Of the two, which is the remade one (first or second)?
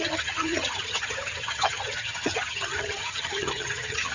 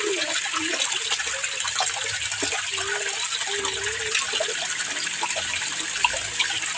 first